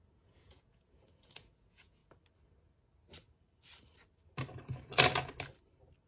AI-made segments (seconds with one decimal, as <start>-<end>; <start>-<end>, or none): 0.0-2.0